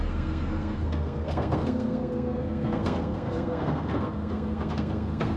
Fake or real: fake